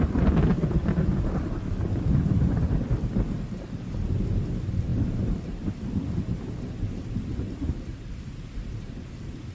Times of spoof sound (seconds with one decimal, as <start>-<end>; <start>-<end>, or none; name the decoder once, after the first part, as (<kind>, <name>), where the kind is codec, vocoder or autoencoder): 6.3-8.1 (vocoder, BigVGAN v2)